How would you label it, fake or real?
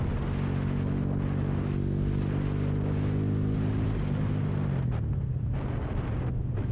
real